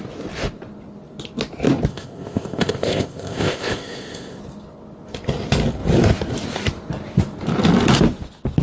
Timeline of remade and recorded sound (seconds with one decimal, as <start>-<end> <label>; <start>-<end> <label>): 0.0-1.9 recorded; 1.9-4.4 remade; 4.4-8.6 recorded